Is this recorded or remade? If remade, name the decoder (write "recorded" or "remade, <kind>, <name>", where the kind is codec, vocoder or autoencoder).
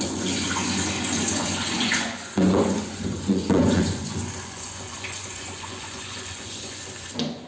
remade, vocoder, Vocos